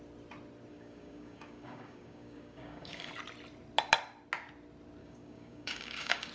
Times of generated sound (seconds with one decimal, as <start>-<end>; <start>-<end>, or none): 0.7-3.1; 5.0-6.3

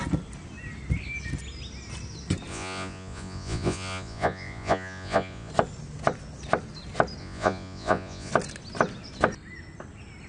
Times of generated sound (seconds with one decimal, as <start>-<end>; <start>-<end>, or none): 2.5-5.5; 7.2-8.3

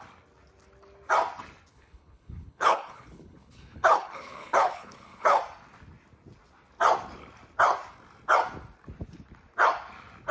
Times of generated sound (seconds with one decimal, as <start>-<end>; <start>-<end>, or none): 1.7-5.4

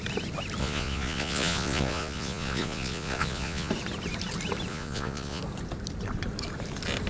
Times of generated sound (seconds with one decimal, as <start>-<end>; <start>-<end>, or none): 0.6-3.7; 4.7-5.4

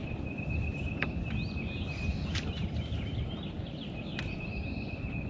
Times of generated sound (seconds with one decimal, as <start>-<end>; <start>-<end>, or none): none

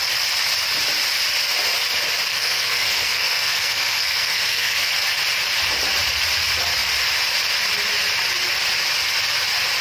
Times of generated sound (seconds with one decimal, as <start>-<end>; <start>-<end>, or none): 2.3-4.9